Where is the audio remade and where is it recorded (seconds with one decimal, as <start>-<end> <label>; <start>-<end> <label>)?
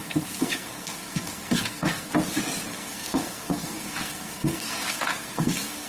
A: 0.0-2.1 remade; 2.1-2.7 recorded; 2.7-5.9 remade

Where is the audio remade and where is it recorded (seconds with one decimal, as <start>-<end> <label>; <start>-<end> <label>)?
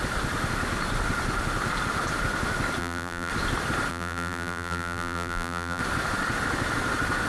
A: 0.0-2.8 recorded; 2.8-3.3 remade; 3.3-3.9 recorded; 3.9-5.8 remade; 5.8-7.3 recorded